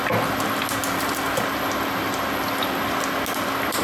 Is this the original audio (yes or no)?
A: yes